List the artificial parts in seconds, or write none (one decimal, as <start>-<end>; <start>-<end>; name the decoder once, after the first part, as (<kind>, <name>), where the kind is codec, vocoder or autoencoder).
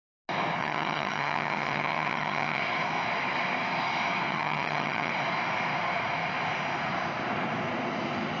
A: 0.6-2.6 (vocoder, HiFi-GAN); 4.3-5.1